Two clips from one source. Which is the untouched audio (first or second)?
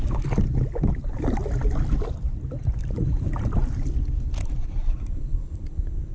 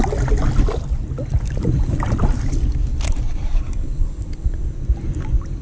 second